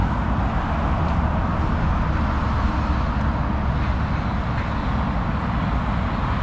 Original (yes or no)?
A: yes